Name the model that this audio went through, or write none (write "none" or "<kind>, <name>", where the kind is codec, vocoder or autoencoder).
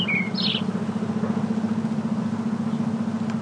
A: none